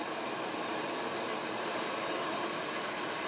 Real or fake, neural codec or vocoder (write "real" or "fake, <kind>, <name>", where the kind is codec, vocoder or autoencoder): real